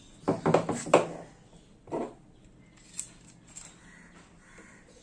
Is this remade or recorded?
recorded